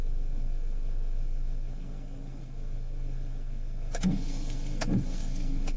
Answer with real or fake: fake